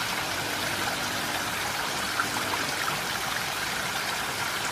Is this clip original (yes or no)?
yes